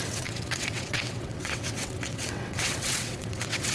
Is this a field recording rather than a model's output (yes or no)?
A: no